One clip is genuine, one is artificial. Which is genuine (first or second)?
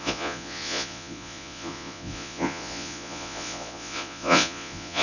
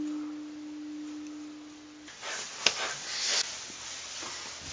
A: second